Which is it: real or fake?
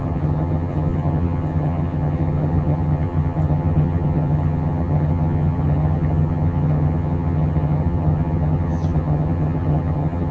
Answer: fake